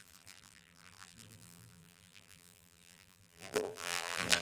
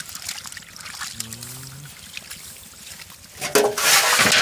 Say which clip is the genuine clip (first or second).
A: second